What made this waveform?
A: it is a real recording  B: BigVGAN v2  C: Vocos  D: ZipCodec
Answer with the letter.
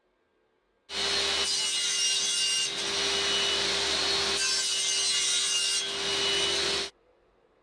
A